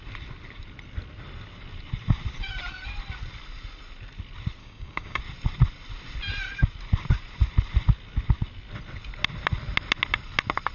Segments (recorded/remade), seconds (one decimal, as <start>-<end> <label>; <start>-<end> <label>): 0.0-4.6 recorded; 4.6-5.2 remade; 5.2-10.7 recorded